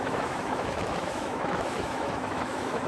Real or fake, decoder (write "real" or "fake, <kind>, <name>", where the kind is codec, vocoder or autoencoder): fake, autoencoder, DAC-VAE